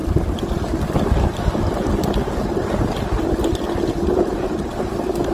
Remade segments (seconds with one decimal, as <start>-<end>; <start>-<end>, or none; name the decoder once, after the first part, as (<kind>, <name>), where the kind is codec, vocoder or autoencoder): none